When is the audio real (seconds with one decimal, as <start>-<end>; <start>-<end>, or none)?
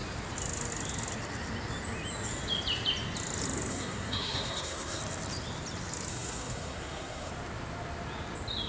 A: 0.0-3.7; 5.0-6.1; 7.3-8.7